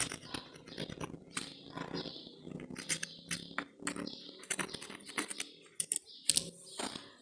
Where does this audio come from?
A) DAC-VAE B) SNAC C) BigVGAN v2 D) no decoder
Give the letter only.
D